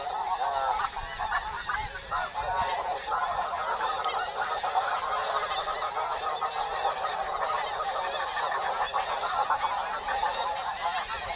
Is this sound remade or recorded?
recorded